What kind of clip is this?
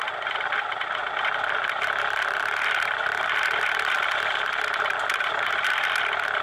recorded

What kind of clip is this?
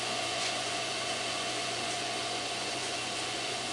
remade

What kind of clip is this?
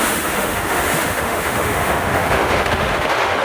remade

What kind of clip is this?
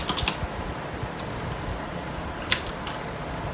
recorded